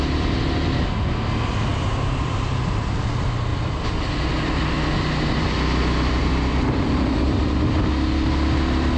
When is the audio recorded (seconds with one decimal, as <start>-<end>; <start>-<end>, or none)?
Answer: 0.0-1.7; 3.1-3.5; 4.3-6.2; 6.8-9.0